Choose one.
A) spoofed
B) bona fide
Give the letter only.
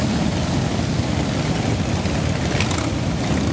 B